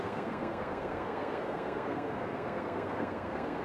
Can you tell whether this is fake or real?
fake